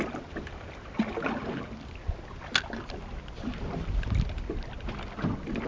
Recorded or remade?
recorded